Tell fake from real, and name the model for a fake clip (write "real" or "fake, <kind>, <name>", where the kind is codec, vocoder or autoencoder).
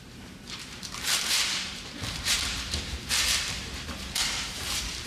fake, vocoder, BigVGAN v2